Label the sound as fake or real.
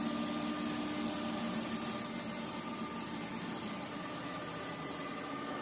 real